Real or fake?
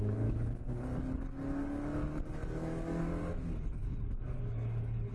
fake